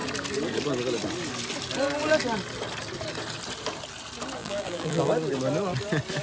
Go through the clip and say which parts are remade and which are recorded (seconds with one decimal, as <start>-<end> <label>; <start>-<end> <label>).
0.0-4.4 recorded; 4.4-5.1 remade; 5.1-6.2 recorded

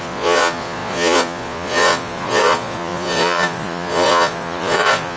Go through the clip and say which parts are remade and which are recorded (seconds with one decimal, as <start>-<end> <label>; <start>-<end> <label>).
0.0-5.2 remade

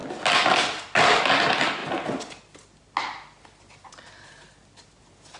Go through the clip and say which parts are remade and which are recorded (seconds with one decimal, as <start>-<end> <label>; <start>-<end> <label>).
0.0-5.4 recorded

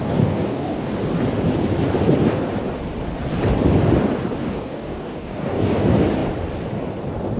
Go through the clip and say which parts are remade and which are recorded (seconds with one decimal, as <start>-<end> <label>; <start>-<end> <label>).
0.0-0.9 remade; 0.9-4.4 recorded; 4.4-5.8 remade; 5.8-7.4 recorded

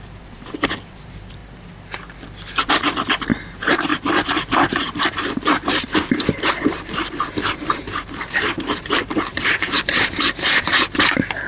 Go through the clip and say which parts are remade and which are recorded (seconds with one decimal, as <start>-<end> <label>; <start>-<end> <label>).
0.0-1.4 remade; 1.4-3.5 recorded; 3.5-3.9 remade; 3.9-5.0 recorded; 5.0-11.5 remade

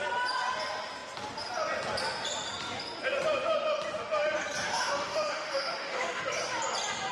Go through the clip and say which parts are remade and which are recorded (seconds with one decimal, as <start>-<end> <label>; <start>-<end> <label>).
0.0-4.7 recorded; 4.7-6.2 remade; 6.2-7.1 recorded

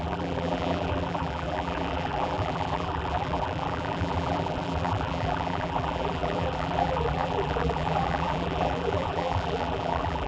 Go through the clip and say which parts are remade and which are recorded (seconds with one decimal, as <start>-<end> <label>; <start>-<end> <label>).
0.0-10.3 remade